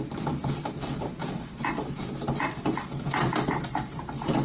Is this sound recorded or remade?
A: remade